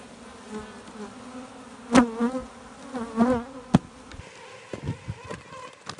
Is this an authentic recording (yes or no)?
yes